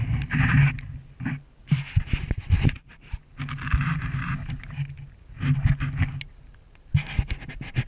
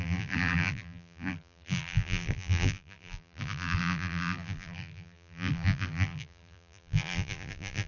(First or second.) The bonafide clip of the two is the first